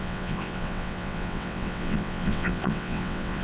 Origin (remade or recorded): remade